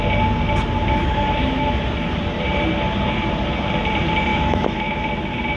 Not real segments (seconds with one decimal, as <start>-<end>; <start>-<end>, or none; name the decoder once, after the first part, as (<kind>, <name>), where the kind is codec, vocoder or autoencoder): 1.0-1.8 (autoencoder, DAC-VAE); 4.3-5.0